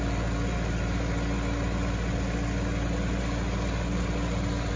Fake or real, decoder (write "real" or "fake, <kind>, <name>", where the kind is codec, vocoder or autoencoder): real